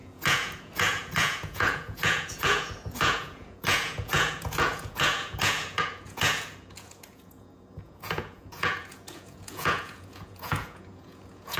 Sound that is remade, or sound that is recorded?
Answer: remade